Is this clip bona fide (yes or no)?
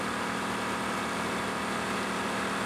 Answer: yes